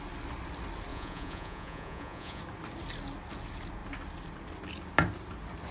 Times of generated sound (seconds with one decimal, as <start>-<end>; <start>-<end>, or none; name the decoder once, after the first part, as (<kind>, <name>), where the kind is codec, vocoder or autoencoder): 0.9-2.4 (vocoder, Vocos)